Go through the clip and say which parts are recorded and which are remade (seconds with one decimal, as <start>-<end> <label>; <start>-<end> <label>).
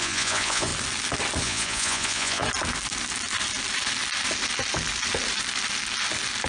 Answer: 0.0-0.7 remade; 0.7-1.4 recorded; 1.4-2.4 remade; 2.4-6.5 recorded